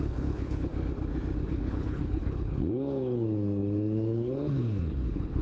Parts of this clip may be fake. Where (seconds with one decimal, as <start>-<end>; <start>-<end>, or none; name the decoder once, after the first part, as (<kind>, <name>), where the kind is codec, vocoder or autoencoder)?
0.0-0.7 (codec, HILCodec); 1.5-5.4